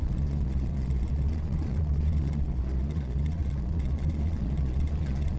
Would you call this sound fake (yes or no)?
yes